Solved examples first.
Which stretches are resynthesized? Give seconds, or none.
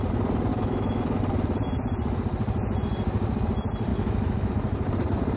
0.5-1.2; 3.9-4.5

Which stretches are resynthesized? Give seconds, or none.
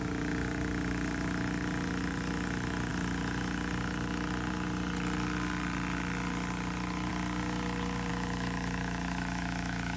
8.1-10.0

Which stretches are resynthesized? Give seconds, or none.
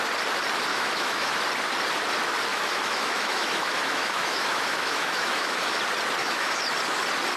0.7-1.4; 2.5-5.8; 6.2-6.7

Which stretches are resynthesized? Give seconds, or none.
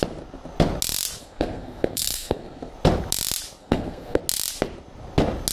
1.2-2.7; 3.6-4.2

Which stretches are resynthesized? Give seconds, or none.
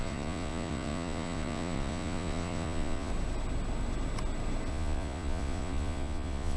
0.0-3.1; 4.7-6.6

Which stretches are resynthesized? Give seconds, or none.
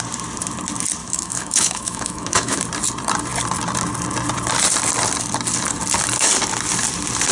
1.0-2.6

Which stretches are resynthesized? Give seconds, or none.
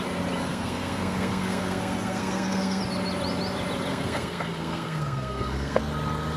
0.5-2.8; 3.9-5.8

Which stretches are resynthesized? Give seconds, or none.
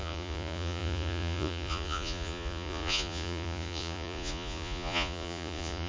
0.0-5.9